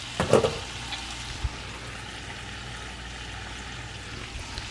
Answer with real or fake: real